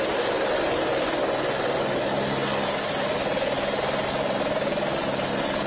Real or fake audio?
real